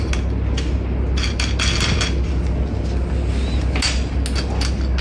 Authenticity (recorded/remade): recorded